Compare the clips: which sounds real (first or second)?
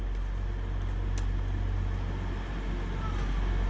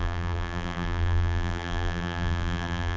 first